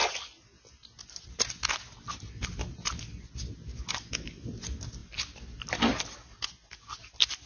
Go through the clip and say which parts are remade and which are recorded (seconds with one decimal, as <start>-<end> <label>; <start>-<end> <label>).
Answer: 0.0-7.5 recorded

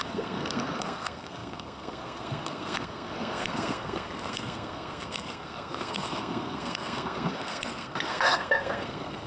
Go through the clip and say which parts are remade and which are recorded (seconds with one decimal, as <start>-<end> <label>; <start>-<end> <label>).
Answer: 0.0-9.3 remade

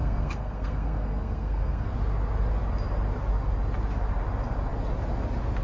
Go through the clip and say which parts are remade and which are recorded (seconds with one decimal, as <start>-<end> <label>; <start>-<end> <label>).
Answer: 0.0-1.9 remade; 1.9-5.6 recorded

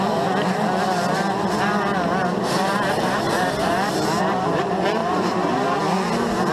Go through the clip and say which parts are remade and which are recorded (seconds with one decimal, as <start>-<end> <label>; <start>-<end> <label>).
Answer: 0.0-2.2 recorded; 2.2-4.6 remade; 4.6-5.0 recorded; 5.0-5.8 remade; 5.8-6.5 recorded

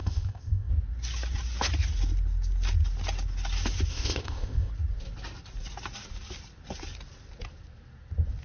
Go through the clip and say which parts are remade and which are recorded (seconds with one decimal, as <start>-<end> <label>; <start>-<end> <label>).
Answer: 0.0-0.7 remade; 0.7-3.9 recorded; 3.9-4.7 remade; 4.7-8.4 recorded

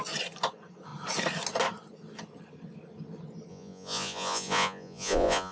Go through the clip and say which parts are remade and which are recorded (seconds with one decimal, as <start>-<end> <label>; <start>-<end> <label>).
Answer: 0.0-3.5 recorded; 3.5-5.5 remade

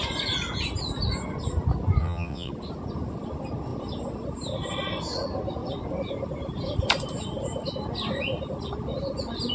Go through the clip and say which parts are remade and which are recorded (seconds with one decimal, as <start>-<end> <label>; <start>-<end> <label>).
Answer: 0.0-2.0 recorded; 2.0-2.5 remade; 2.5-9.5 recorded